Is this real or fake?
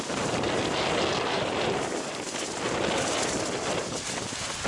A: real